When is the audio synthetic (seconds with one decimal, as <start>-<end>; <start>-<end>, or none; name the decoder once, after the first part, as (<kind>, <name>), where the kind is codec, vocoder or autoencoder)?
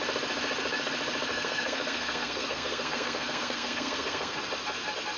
1.3-4.4 (codec, SNAC)